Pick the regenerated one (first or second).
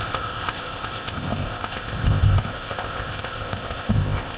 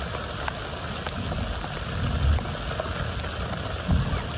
first